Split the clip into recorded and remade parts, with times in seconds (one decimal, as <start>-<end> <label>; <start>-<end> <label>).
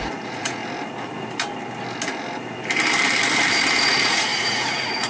0.0-0.6 remade; 0.6-3.7 recorded; 3.7-5.1 remade